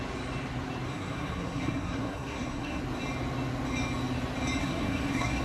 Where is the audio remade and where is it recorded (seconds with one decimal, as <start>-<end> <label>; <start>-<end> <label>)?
0.0-0.9 recorded; 0.9-2.8 remade; 2.8-4.6 recorded; 4.6-5.4 remade